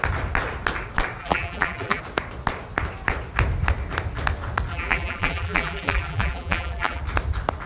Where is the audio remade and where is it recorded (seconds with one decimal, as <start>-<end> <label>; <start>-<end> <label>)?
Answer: 0.0-1.2 recorded; 1.2-2.0 remade; 2.0-4.7 recorded; 4.7-7.0 remade; 7.0-7.7 recorded